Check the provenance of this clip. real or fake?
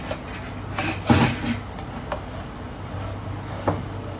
real